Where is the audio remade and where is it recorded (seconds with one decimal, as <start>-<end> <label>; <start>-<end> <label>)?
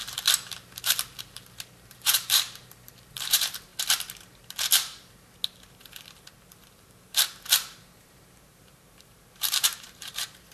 0.0-3.7 remade; 3.7-6.5 recorded; 6.5-10.5 remade